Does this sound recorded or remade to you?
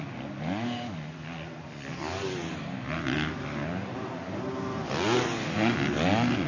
recorded